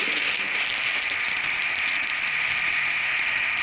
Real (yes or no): yes